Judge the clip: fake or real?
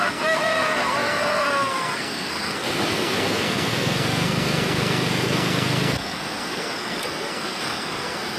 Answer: fake